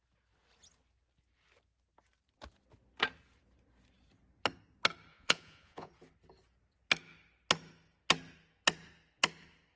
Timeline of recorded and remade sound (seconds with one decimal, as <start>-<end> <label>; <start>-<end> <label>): 0.0-5.1 recorded; 5.1-5.9 remade; 5.9-9.8 recorded

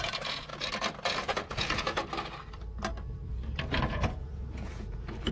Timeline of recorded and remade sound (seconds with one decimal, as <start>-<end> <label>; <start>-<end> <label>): 0.0-0.5 remade; 0.5-1.2 recorded; 1.2-2.0 remade; 2.0-3.9 recorded; 3.9-5.3 remade

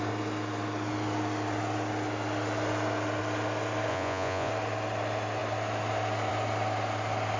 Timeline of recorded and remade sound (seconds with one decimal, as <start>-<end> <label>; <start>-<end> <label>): 0.0-3.9 recorded; 3.9-4.5 remade; 4.5-7.4 recorded